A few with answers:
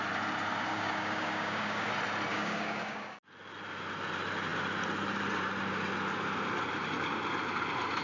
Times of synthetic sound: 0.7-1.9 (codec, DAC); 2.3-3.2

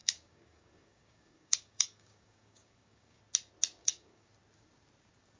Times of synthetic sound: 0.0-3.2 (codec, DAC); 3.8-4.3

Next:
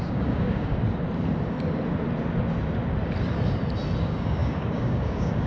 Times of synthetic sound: 0.0-0.8 (codec, DAC); 4.0-5.5